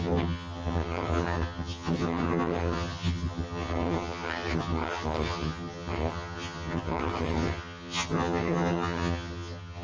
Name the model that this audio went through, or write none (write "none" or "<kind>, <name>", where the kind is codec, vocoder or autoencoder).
vocoder, HiFi-GAN